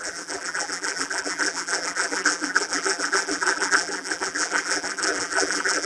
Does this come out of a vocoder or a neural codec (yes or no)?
yes